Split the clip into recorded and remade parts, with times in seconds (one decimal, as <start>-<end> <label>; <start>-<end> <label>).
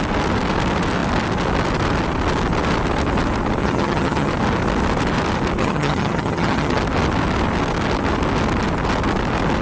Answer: 0.0-3.6 recorded; 3.6-4.3 remade; 4.3-5.6 recorded; 5.6-6.8 remade; 6.8-9.6 recorded